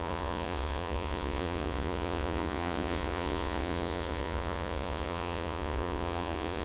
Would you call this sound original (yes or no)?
no